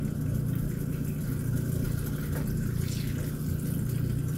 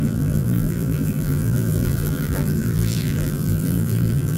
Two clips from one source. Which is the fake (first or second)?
second